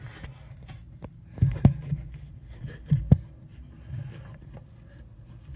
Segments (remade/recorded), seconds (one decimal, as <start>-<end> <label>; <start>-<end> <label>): 0.0-5.6 recorded